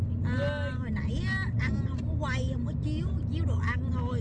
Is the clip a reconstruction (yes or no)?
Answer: no